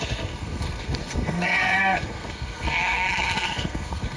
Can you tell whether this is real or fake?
fake